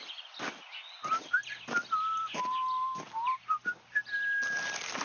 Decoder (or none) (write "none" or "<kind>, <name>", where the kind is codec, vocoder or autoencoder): none